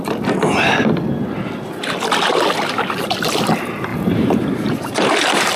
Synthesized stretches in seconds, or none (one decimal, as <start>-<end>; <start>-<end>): 3.9-5.1